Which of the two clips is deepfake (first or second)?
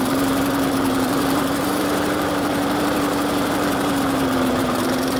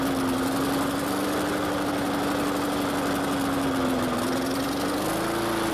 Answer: first